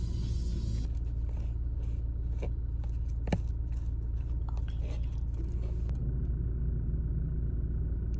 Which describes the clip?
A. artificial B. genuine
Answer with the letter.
B